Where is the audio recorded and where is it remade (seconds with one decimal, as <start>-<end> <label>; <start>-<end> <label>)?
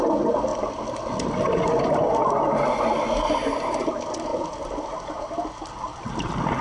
0.0-6.6 recorded